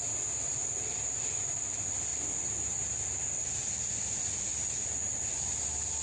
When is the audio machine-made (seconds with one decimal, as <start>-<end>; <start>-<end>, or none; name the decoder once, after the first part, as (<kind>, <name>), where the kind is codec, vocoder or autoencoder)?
none